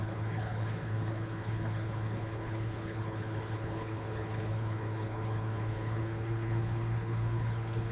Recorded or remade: remade